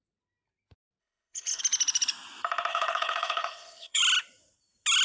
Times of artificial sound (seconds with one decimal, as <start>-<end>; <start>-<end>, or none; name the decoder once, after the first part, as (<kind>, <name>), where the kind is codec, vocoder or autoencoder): 1.0-1.6 (codec, HILCodec); 2.7-4.0